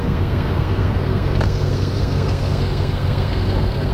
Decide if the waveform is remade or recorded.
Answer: remade